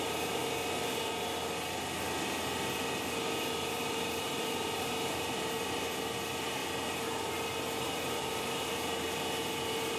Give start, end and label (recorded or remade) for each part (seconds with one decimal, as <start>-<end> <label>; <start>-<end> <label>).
0.0-0.4 remade; 0.4-3.7 recorded; 3.7-6.6 remade; 6.6-7.8 recorded; 7.8-10.0 remade